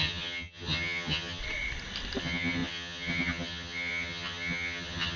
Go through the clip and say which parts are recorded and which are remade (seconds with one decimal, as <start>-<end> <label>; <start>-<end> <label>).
0.0-1.4 remade; 1.4-2.2 recorded; 2.2-5.2 remade